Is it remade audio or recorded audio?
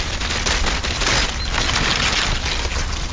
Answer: recorded